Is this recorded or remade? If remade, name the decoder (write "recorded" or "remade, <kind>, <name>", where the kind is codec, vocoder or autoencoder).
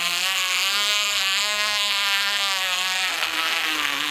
remade, codec, SNAC